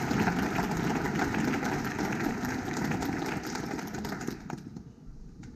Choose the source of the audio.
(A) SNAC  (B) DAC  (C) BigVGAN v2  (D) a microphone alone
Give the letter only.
D